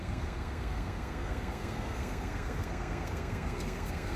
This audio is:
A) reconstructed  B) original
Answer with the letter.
A